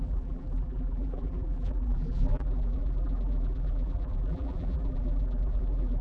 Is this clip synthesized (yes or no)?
yes